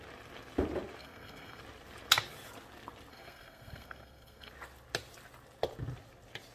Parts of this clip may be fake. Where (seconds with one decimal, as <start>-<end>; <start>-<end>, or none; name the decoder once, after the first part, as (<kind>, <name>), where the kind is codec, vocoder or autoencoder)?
1.0-1.6 (codec, SNAC); 3.1-4.5